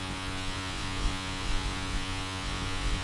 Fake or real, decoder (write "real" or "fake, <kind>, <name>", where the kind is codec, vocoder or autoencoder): fake, vocoder, Vocos